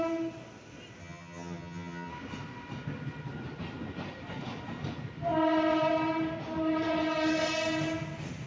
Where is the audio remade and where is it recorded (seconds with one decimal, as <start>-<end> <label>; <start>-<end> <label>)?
0.0-1.0 recorded; 1.0-2.1 remade; 2.1-8.5 recorded